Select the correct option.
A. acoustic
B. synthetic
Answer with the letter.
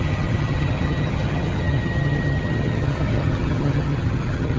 B